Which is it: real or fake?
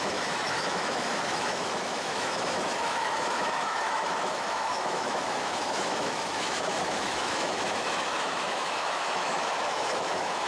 fake